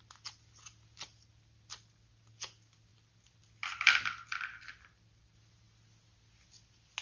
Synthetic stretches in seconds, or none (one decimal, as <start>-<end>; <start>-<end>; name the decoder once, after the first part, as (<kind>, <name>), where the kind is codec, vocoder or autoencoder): none